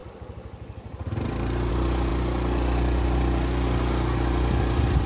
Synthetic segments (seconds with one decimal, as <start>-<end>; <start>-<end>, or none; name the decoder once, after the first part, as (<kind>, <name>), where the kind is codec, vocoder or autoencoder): none